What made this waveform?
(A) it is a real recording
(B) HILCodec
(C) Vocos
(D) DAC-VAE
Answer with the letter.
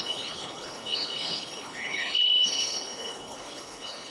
B